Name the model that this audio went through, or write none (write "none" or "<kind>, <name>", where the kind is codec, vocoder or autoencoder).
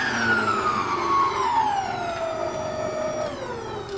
none